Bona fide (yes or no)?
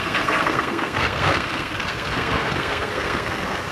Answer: no